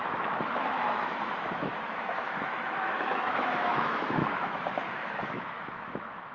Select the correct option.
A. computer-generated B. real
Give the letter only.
A